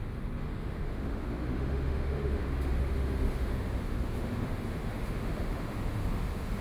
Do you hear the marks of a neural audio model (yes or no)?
yes